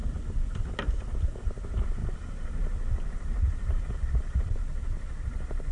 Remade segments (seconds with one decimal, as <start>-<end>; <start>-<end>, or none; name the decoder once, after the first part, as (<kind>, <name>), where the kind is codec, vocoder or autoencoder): 2.0-4.6 (vocoder, BigVGAN v2)